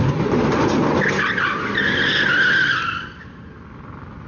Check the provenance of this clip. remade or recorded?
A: recorded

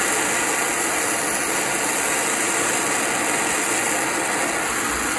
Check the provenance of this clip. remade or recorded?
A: recorded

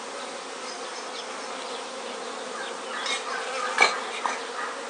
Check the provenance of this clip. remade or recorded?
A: recorded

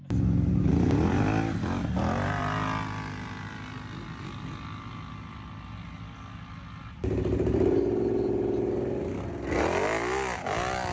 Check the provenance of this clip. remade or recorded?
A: recorded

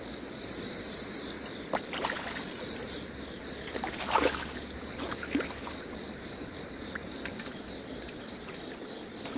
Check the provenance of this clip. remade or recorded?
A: recorded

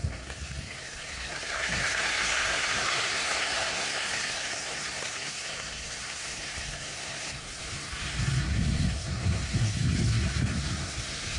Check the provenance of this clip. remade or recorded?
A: remade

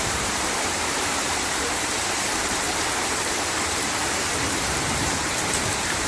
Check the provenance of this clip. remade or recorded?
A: remade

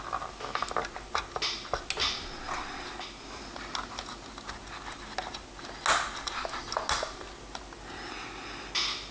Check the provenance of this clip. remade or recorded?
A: recorded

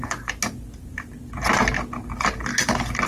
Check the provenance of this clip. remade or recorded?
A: recorded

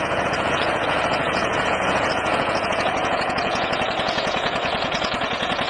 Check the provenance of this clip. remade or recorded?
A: remade